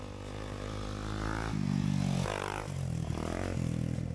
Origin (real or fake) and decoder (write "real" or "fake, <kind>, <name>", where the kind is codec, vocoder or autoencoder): real